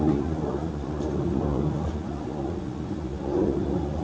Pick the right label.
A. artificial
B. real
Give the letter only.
A